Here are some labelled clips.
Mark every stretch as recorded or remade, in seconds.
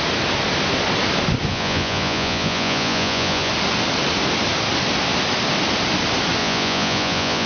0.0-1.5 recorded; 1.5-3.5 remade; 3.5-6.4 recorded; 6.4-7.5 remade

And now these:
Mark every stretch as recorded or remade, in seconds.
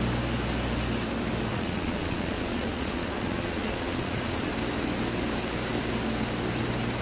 0.0-1.5 recorded; 1.5-4.5 remade; 4.5-7.0 recorded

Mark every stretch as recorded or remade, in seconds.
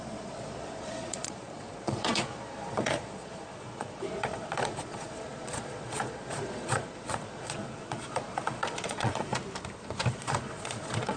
0.0-9.3 remade; 9.3-10.1 recorded; 10.1-11.2 remade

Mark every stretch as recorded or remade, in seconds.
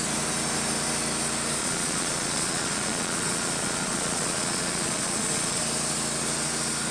0.0-1.6 recorded; 1.6-5.6 remade; 5.6-6.9 recorded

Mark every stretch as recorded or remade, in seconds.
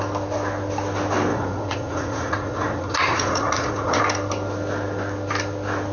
0.0-1.3 recorded; 1.3-4.0 remade; 4.0-5.9 recorded